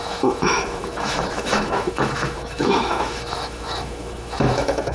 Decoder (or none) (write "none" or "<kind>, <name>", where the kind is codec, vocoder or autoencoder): autoencoder, DAC-VAE